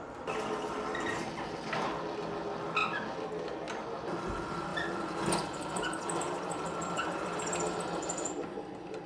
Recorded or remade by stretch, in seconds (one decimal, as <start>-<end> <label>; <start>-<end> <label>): 0.0-4.7 recorded; 4.7-9.1 remade